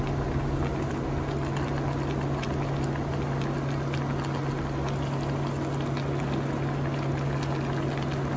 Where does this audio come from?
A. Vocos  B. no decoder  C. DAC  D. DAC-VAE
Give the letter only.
B